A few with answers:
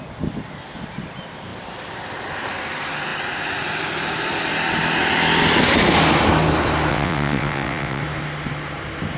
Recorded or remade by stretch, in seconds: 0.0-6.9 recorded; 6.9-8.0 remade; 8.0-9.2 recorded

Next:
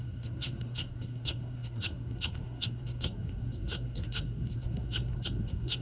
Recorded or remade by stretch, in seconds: 0.0-5.8 remade